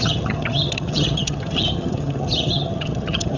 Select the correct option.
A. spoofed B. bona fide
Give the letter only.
A